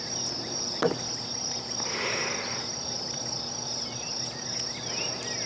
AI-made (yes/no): no